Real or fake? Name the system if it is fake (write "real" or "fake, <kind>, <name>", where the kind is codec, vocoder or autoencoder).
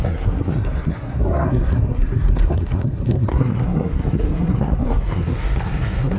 fake, codec, SNAC